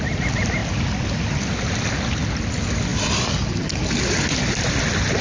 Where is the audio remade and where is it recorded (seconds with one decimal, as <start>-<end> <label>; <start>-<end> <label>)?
0.0-5.2 recorded